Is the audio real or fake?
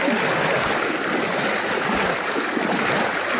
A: real